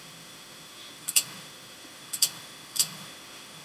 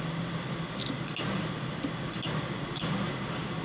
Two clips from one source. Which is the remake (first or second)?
first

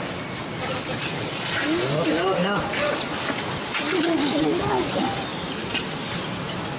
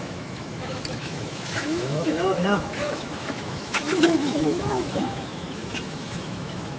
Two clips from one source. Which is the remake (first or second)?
second